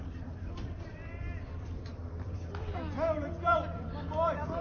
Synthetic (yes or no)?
yes